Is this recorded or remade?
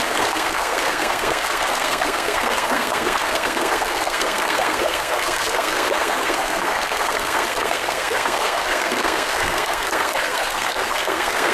remade